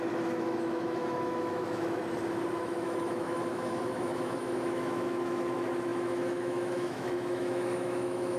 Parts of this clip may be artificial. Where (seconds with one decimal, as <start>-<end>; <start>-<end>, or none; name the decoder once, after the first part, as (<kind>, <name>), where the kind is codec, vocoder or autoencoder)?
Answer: 0.0-2.0 (autoencoder, DAC-VAE); 2.6-8.4